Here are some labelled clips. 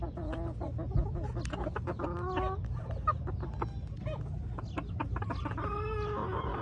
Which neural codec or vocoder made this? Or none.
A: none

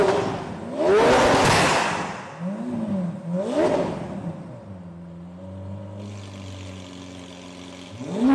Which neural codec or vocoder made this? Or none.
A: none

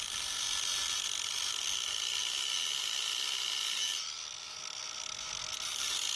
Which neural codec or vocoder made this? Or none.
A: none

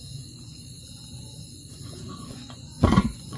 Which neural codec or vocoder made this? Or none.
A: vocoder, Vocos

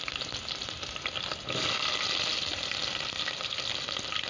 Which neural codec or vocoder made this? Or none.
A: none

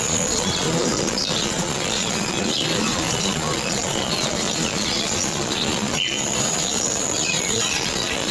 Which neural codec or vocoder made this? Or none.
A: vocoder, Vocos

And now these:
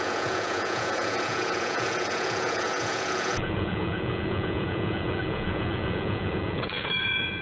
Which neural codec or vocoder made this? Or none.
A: vocoder, Vocos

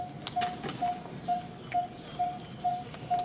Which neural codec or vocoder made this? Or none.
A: none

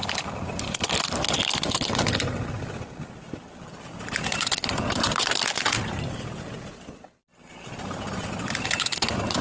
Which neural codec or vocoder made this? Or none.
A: none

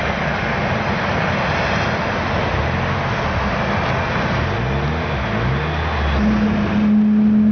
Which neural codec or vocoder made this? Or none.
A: none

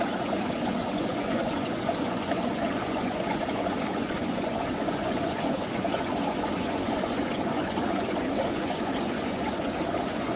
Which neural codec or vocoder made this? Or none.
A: vocoder, Vocos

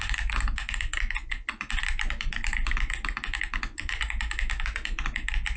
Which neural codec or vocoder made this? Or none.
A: none